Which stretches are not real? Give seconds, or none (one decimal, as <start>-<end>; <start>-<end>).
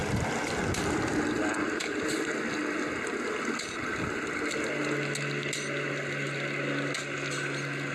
none